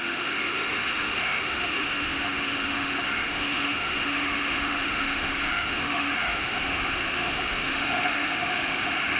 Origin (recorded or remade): remade